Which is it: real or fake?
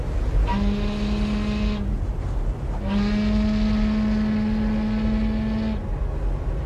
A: real